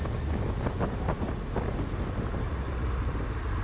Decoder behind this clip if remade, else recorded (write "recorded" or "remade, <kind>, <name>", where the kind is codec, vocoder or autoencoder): recorded